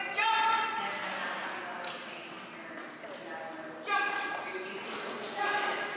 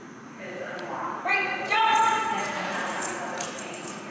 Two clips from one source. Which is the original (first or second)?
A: first